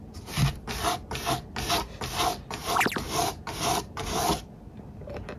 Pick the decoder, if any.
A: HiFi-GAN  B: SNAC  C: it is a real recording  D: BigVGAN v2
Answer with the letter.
C